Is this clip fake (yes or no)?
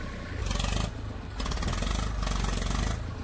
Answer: no